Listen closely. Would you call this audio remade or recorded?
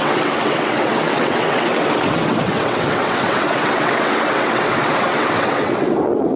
remade